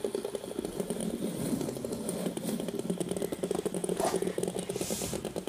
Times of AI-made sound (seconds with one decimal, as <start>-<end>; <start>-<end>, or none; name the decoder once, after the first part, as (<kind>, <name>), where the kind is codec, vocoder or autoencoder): 3.8-4.4 (vocoder, Vocos)